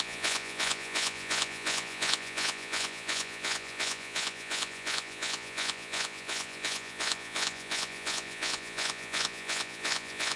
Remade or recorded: remade